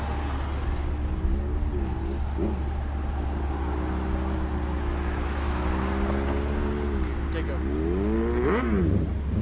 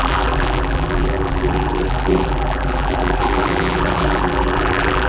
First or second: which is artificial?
second